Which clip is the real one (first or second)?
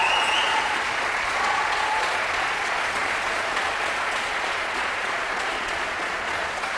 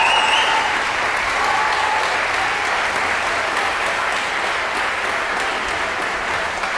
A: second